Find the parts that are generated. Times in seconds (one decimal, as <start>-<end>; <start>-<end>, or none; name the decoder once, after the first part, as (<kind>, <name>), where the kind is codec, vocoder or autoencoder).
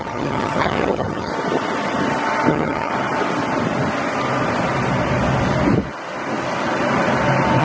0.0-1.3 (vocoder, HiFi-GAN); 2.5-2.9